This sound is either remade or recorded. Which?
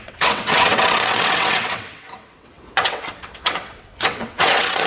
remade